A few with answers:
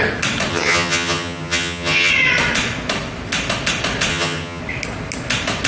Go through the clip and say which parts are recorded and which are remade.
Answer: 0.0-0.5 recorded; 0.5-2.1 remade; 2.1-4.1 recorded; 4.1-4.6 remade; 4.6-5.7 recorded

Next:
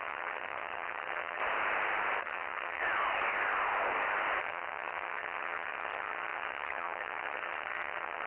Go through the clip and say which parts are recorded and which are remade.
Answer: 0.0-1.4 remade; 1.4-2.2 recorded; 2.2-2.8 remade; 2.8-4.4 recorded; 4.4-8.3 remade

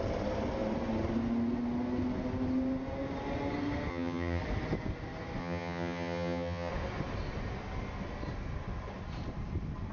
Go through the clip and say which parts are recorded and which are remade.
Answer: 0.0-3.9 recorded; 3.9-4.4 remade; 4.4-5.4 recorded; 5.4-6.7 remade; 6.7-9.9 recorded

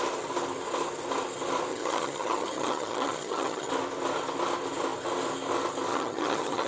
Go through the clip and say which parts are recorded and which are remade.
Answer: 0.0-1.7 recorded; 1.7-3.7 remade; 3.7-5.9 recorded; 5.9-6.7 remade

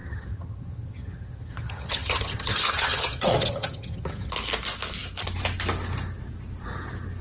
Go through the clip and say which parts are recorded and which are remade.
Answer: 0.0-4.3 remade; 4.3-7.2 recorded

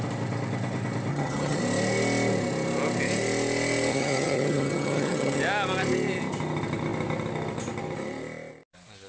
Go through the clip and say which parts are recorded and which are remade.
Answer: 0.0-1.1 recorded; 1.1-1.6 remade; 1.6-3.9 recorded; 3.9-5.4 remade; 5.4-9.1 recorded

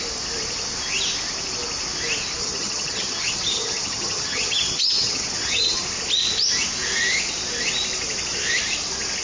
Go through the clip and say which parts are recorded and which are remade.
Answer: 0.0-2.4 recorded; 2.4-5.8 remade; 5.8-9.2 recorded